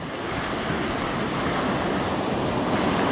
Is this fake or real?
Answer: real